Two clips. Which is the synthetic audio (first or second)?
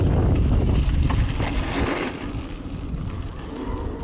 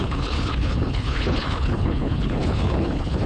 second